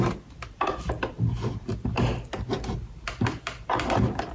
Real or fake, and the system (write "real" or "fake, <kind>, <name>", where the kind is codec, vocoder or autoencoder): real